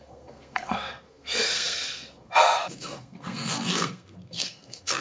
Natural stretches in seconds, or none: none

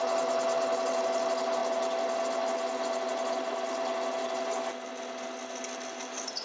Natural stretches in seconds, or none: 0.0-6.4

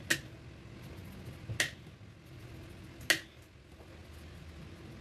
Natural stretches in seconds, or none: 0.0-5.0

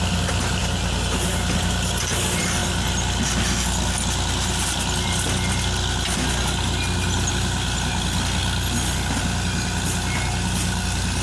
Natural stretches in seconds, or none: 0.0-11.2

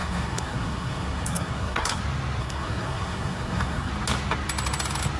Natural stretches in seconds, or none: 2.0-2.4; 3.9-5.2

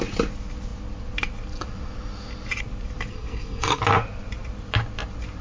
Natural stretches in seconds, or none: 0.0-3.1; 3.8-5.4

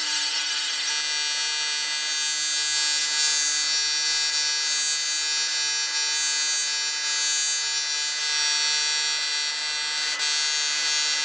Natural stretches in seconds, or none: 0.9-11.2